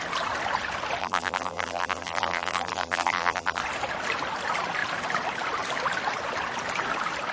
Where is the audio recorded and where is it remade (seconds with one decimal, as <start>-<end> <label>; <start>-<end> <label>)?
0.0-1.0 recorded; 1.0-3.6 remade; 3.6-7.3 recorded